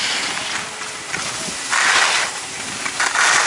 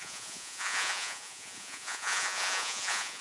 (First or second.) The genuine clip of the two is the first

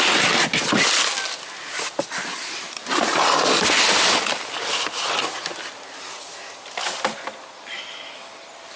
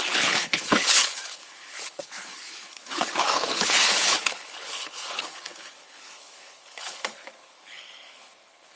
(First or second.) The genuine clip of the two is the first